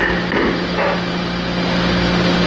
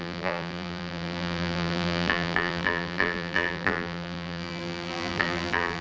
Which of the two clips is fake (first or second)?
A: second